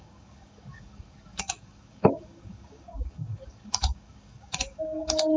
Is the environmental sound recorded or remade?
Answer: remade